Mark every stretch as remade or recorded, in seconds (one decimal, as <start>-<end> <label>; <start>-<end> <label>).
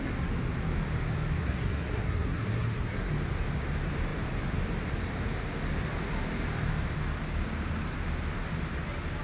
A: 0.0-1.4 recorded; 1.4-3.1 remade; 3.1-9.2 recorded